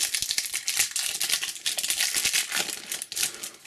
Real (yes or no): yes